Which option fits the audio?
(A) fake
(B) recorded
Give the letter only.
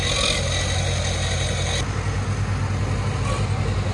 B